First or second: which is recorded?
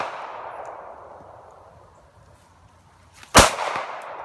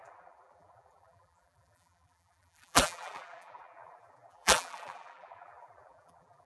first